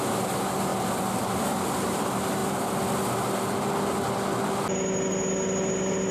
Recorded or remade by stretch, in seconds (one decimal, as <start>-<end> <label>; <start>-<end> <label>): 0.0-6.1 recorded